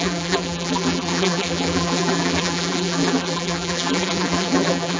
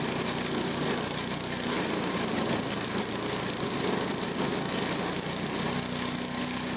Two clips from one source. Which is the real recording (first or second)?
second